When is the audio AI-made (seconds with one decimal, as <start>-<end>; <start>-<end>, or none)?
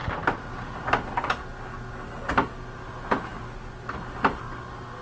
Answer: none